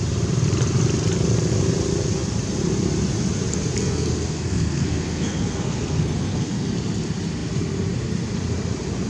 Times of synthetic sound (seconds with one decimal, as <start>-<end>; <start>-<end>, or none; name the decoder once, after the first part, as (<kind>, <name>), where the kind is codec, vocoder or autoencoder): 3.8-6.7 (codec, SNAC)